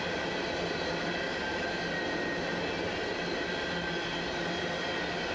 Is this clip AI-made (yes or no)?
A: no